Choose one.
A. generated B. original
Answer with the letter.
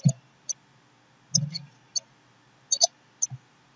B